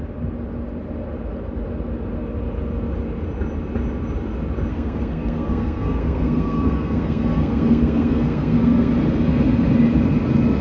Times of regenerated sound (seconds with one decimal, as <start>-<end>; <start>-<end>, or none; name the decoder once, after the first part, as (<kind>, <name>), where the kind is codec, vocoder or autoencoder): 4.7-8.9 (codec, SNAC)